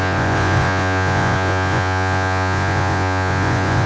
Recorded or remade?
remade